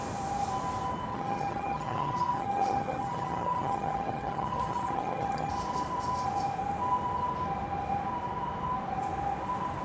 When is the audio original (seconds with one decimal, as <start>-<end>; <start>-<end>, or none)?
0.0-1.1; 5.5-9.8